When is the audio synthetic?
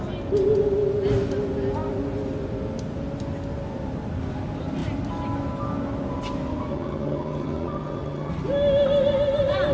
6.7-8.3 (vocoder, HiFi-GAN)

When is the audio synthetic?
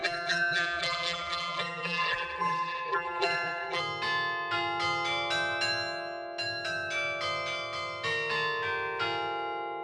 0.0-3.8 (vocoder, BigVGAN v2)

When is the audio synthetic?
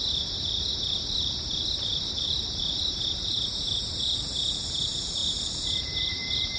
0.0-5.2 (vocoder, BigVGAN v2); 5.8-6.6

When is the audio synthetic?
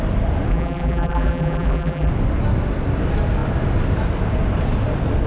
0.5-2.1 (vocoder, BigVGAN v2)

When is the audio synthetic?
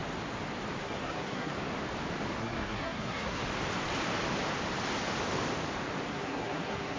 0.8-1.5 (codec, SNAC); 2.4-3.4; 6.1-7.0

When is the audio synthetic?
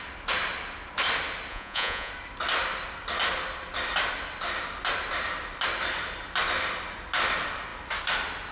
1.5-2.1 (vocoder, Vocos)